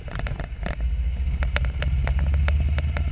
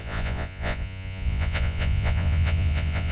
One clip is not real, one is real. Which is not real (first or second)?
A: second